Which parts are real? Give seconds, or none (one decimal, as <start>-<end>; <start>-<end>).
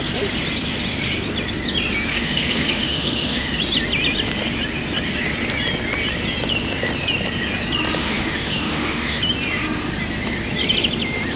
0.0-2.1; 3.6-8.0; 9.2-11.4